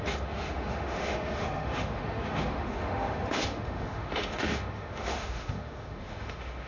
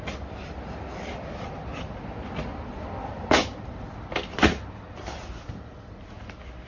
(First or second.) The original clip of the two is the second